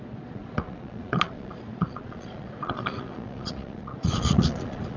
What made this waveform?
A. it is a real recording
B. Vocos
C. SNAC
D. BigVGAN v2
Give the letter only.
B